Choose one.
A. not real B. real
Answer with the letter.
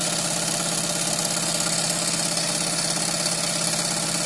B